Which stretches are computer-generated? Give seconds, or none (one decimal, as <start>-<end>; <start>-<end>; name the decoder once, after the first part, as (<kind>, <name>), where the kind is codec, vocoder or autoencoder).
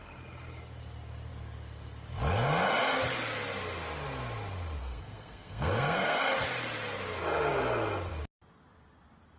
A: 4.8-6.2 (codec, SNAC)